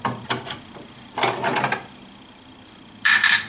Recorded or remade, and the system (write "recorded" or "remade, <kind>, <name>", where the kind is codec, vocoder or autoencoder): remade, vocoder, BigVGAN v2